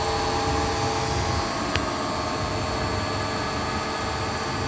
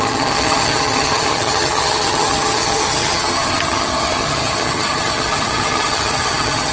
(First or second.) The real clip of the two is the first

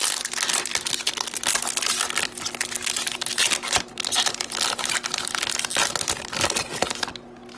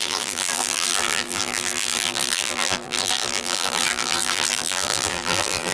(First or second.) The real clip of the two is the first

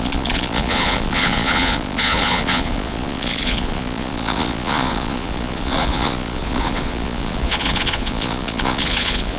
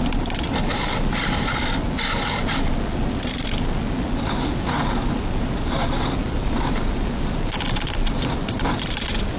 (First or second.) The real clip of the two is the second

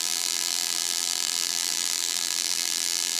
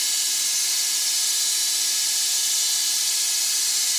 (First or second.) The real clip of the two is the second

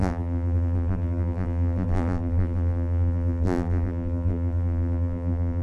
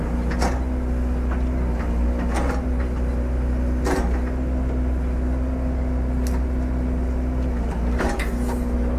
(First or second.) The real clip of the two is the second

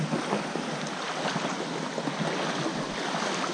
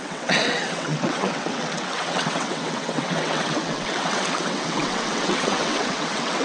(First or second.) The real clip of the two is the first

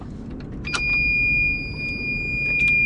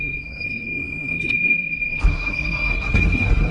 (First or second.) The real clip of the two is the first